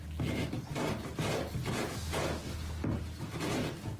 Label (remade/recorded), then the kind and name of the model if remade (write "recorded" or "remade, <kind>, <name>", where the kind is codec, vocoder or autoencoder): recorded